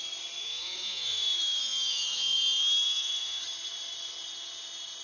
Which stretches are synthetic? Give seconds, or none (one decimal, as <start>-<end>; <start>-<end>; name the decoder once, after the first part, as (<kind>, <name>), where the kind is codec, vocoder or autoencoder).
0.4-3.4 (autoencoder, DAC-VAE)